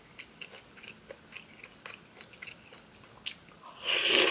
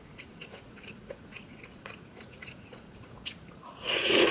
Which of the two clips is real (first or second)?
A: first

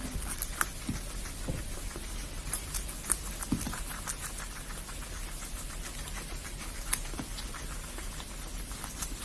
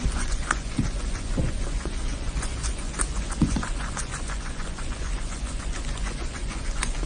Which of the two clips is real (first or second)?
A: first